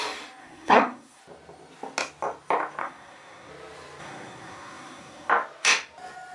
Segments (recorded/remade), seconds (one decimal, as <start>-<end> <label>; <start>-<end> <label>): 0.0-0.4 recorded; 0.4-1.2 remade; 1.2-2.8 recorded; 2.8-3.5 remade; 3.5-4.0 recorded; 4.0-5.3 remade; 5.3-6.3 recorded